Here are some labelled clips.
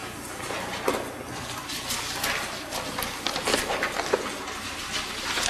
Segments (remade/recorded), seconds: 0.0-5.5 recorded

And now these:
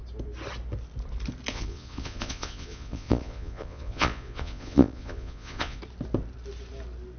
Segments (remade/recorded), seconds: 0.0-1.5 recorded; 1.5-5.8 remade; 5.8-7.2 recorded

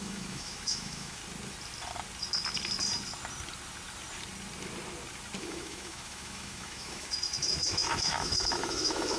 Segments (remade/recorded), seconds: 0.0-1.2 remade; 1.2-5.4 recorded; 5.4-9.2 remade

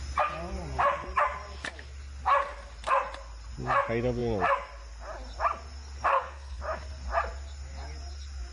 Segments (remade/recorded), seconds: 0.0-6.1 recorded; 6.1-6.6 remade; 6.6-8.5 recorded